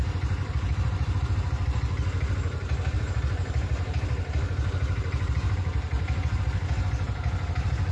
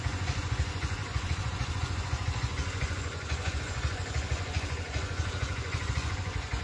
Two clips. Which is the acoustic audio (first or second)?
first